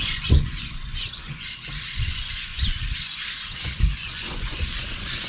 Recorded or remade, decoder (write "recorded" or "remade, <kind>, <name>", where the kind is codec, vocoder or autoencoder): remade, vocoder, Vocos